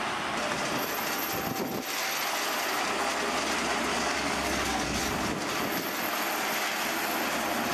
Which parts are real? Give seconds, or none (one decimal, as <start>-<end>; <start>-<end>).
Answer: 0.0-3.9; 5.0-7.7